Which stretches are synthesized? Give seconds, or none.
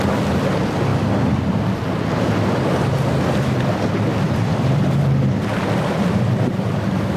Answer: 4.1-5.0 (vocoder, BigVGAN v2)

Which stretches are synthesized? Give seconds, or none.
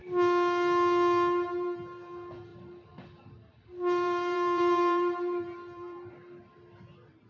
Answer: 2.5-6.1 (vocoder, BigVGAN v2)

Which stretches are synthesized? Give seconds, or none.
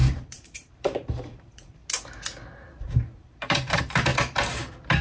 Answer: 0.0-1.8 (vocoder, BigVGAN v2); 2.8-4.1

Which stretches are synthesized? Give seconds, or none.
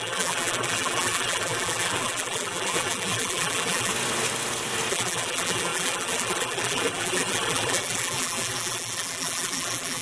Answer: 0.0-3.9 (vocoder, BigVGAN v2); 4.9-10.0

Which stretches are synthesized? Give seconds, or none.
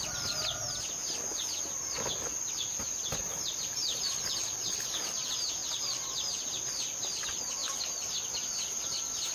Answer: 3.2-5.0 (vocoder, BigVGAN v2); 5.6-6.3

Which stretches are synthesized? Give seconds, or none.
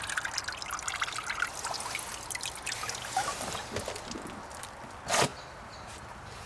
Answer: none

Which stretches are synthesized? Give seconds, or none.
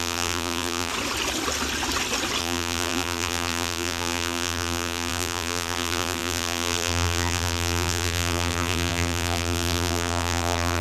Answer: 0.0-0.9 (vocoder, BigVGAN v2); 2.4-10.8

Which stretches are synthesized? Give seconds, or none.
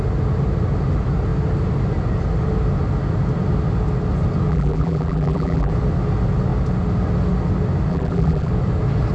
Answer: 4.5-5.7 (vocoder, BigVGAN v2); 7.9-8.5